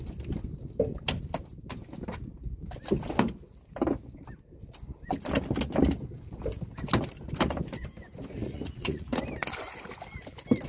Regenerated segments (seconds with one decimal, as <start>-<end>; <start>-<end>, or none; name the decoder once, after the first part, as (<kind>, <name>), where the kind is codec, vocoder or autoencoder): 8.4-9.2 (vocoder, Vocos)